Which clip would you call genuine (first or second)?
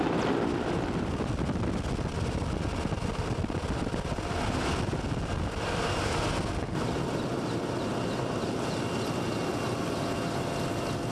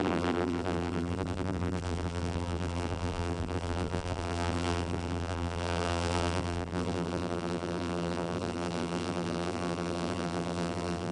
first